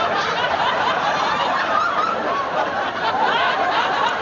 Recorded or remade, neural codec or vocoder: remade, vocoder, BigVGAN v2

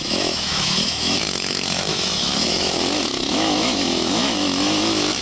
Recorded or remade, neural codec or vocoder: remade, autoencoder, DAC-VAE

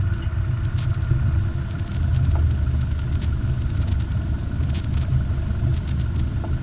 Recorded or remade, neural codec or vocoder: recorded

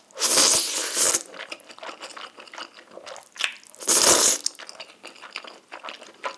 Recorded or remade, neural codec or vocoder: recorded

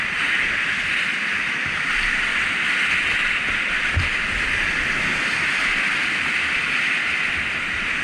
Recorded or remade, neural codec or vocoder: recorded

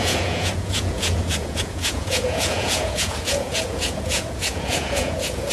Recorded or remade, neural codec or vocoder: remade, vocoder, Vocos